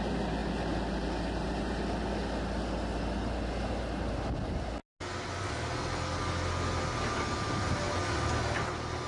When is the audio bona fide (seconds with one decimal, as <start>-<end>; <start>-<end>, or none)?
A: 0.0-9.1